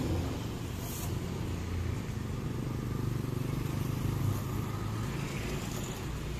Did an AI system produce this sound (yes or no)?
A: no